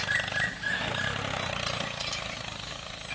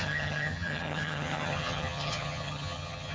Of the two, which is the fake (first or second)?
second